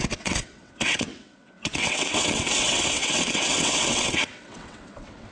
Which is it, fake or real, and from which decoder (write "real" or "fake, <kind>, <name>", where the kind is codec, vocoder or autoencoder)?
fake, vocoder, WaveNeXt